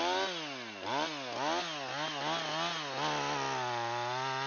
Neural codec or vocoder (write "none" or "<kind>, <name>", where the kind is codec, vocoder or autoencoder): none